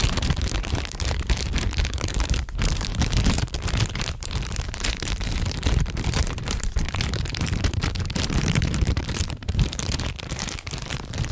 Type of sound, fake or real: fake